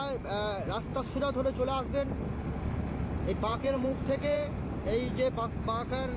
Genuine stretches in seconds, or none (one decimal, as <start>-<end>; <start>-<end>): 0.0-3.5; 4.6-6.2